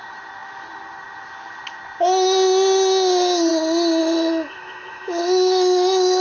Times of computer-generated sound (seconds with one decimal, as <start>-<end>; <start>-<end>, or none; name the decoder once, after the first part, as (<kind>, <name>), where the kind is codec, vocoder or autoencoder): 4.0-6.2 (autoencoder, DAC-VAE)